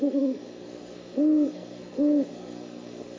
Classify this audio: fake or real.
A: fake